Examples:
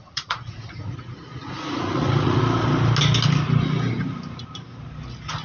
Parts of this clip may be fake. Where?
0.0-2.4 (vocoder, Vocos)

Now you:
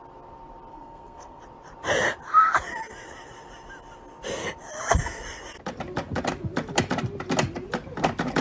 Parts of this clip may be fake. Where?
0.7-1.4 (codec, SNAC)

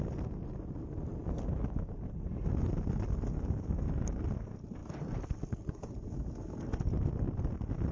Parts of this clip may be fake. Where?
4.8-5.6 (vocoder, BigVGAN v2)

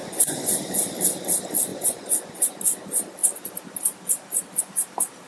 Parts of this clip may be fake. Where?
0.0-0.6 (vocoder, Vocos); 1.7-2.6

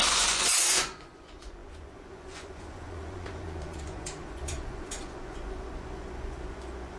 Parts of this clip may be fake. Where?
0.0-7.0 (vocoder, Vocos)

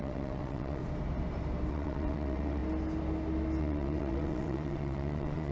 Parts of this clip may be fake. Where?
0.0-0.8 (vocoder, WaveNeXt); 1.7-2.6; 3.6-5.5

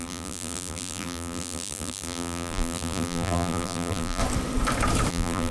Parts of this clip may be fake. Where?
0.0-4.2 (vocoder, BigVGAN v2); 5.1-5.5